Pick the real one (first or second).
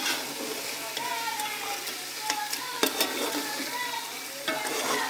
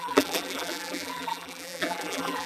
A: first